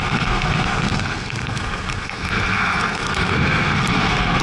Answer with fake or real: fake